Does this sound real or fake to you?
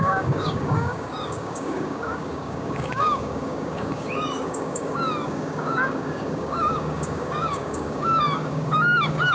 fake